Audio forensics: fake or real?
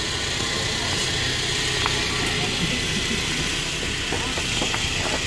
real